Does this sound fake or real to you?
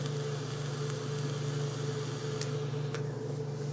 real